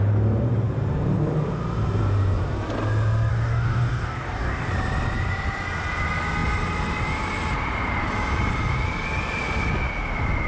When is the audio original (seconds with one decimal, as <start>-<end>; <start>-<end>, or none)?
0.0-3.3; 4.7-10.5